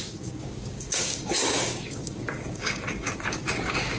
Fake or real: fake